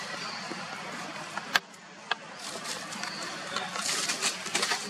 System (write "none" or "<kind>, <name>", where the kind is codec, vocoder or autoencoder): none